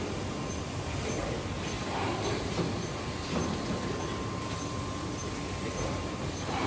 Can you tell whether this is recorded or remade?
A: recorded